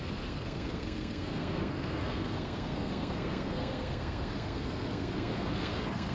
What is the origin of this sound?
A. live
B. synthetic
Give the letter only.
B